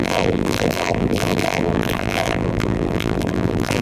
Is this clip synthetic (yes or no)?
yes